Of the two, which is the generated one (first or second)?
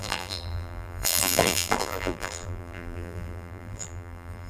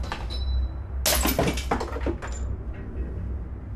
first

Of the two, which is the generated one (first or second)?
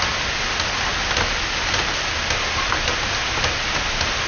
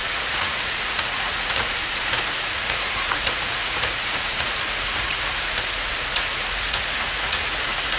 second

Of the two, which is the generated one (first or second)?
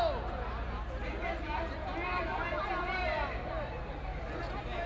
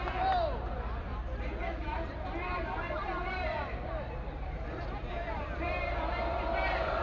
second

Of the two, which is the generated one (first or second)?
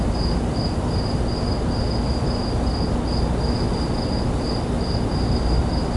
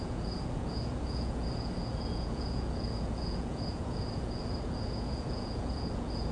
second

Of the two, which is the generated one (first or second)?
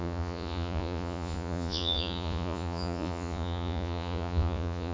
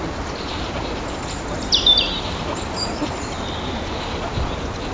first